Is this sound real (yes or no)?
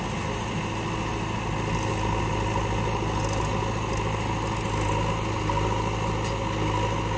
yes